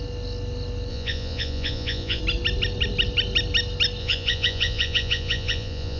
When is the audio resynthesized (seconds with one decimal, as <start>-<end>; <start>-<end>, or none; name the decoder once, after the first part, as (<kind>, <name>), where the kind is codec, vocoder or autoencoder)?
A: 0.9-2.2 (vocoder, Vocos); 4.0-6.0